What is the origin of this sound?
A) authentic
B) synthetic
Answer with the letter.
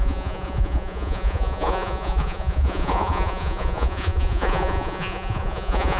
B